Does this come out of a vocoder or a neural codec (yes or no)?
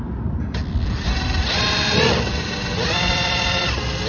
no